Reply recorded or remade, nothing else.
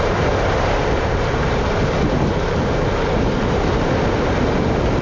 recorded